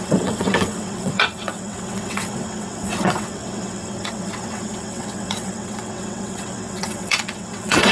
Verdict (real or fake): fake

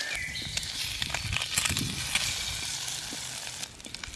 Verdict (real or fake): real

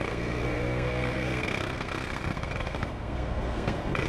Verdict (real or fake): fake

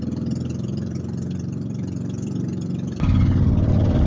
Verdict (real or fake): fake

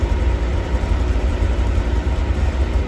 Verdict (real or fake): fake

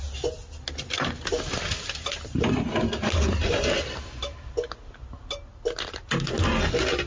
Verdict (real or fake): real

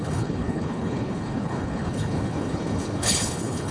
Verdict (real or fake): fake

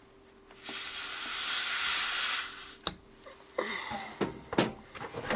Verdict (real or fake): real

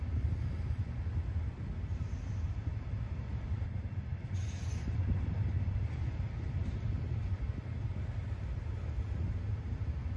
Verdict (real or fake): real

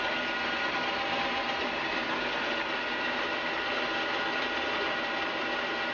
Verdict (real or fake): real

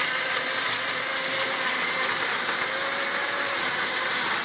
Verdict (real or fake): real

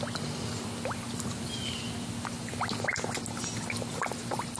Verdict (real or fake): real